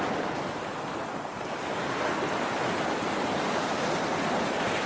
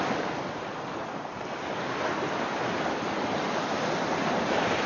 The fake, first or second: second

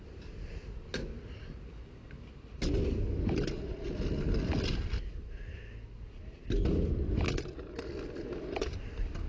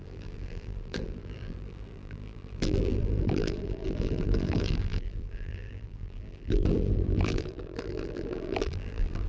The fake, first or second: second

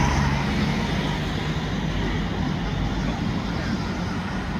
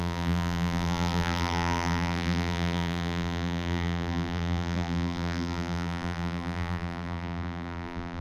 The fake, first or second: second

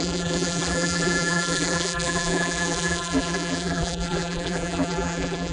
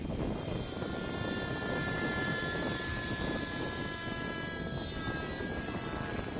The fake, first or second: first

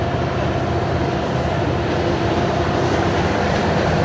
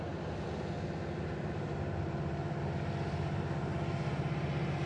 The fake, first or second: first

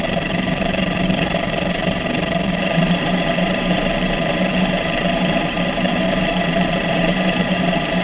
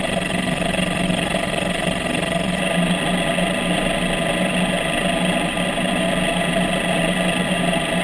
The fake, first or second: first